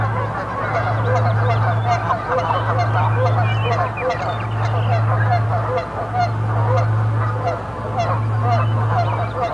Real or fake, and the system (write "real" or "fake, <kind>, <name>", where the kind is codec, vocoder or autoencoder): real